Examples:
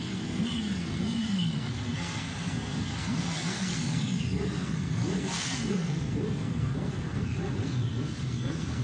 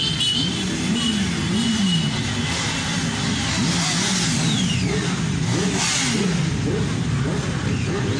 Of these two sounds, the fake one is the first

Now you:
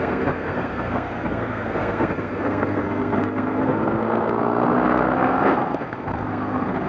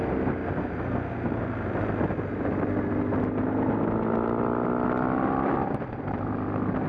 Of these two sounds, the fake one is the first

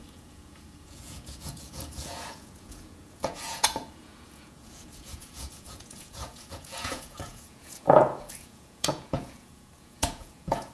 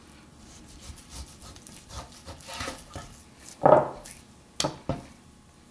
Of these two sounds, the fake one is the first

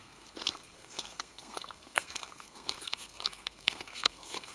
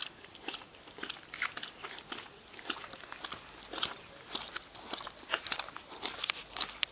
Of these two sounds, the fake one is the first